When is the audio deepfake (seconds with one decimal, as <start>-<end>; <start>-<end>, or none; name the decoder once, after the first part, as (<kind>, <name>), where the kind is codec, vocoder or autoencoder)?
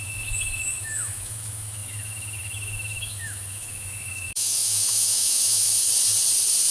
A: 0.0-5.9 (autoencoder, DAC-VAE)